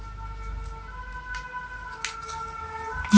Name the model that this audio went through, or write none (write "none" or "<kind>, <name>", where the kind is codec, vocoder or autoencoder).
none